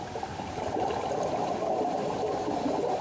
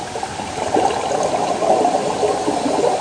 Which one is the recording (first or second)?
second